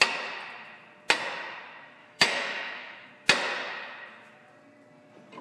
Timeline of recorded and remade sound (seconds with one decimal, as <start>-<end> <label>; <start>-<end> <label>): 0.0-2.0 recorded; 2.0-3.1 remade; 3.1-5.4 recorded